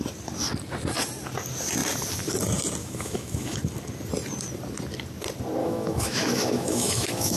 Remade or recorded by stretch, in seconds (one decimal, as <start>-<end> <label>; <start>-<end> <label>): 0.0-2.8 recorded; 2.8-3.6 remade; 3.6-5.6 recorded; 5.6-7.4 remade